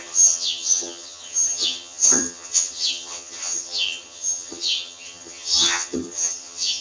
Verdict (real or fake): fake